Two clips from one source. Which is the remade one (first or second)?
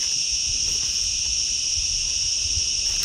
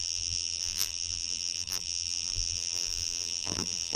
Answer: second